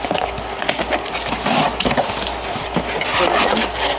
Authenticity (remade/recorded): recorded